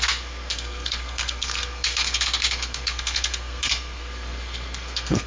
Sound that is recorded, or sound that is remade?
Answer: remade